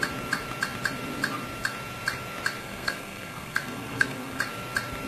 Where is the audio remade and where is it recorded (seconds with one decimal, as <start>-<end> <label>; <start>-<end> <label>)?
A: 0.0-2.6 recorded; 2.6-4.4 remade; 4.4-5.1 recorded